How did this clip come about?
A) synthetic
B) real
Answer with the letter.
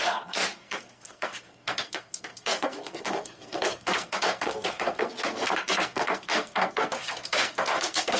A